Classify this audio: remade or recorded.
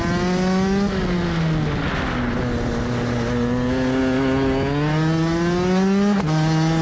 recorded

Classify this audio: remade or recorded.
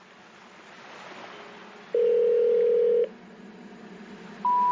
recorded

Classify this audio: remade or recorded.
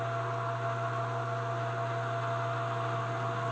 recorded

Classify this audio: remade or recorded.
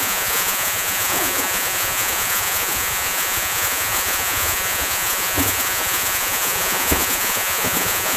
remade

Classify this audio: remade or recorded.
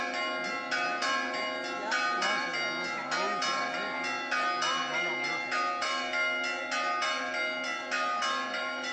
recorded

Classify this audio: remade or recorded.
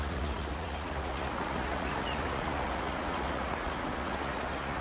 remade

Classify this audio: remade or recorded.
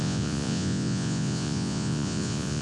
remade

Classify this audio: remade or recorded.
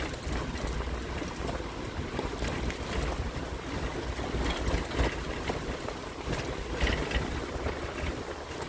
recorded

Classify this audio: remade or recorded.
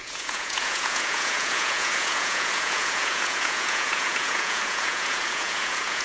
remade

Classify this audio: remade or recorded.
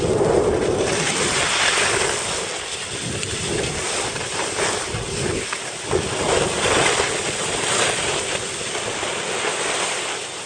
recorded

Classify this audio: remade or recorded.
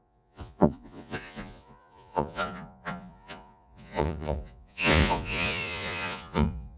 remade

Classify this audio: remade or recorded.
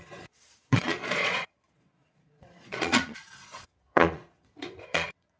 remade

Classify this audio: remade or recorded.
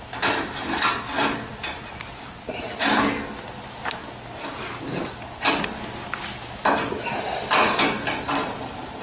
recorded